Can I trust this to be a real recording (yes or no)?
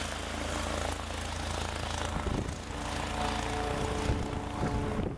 yes